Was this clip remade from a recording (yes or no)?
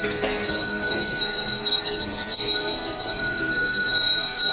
yes